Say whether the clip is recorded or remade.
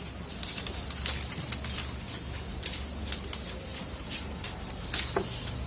recorded